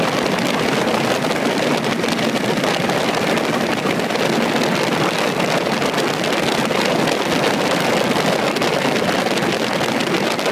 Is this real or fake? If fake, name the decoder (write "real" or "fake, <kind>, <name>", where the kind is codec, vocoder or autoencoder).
real